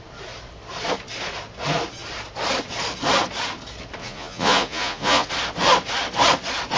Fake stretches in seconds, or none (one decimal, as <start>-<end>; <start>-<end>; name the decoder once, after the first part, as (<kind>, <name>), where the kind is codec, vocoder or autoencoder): 4.0-5.3 (vocoder, Vocos)